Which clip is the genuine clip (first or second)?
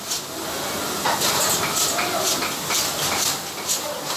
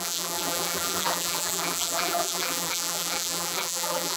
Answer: first